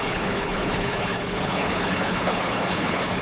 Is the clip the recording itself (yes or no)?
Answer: no